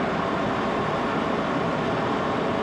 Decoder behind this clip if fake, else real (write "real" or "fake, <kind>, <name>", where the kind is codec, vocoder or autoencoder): fake, vocoder, BigVGAN v2